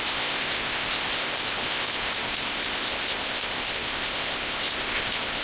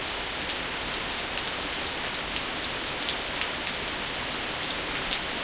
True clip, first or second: second